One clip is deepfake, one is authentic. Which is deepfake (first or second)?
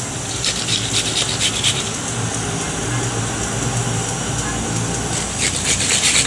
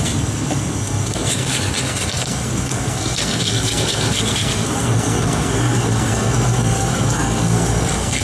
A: second